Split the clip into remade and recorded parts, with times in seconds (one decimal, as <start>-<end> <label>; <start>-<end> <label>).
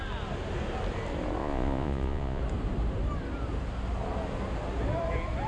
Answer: 0.0-1.4 recorded; 1.4-2.4 remade; 2.4-5.5 recorded